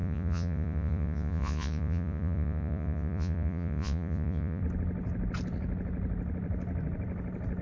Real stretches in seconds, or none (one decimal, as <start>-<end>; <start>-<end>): 4.6-7.6